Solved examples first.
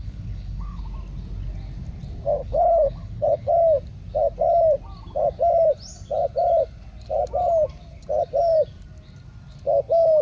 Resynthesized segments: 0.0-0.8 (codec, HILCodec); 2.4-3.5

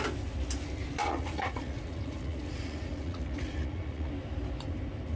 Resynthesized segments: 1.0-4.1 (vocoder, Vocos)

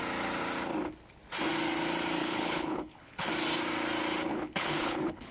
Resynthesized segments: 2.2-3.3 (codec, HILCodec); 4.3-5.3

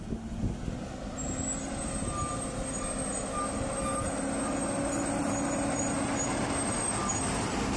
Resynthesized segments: 7.1-7.8 (vocoder, BigVGAN v2)

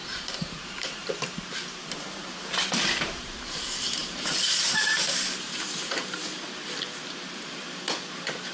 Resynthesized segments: 0.0-6.2 (vocoder, BigVGAN v2); 7.3-8.5

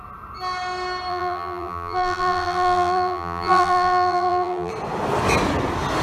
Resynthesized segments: 1.1-4.7 (vocoder, BigVGAN v2)

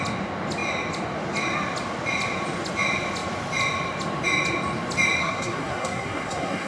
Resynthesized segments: 5.2-6.7 (codec, SNAC)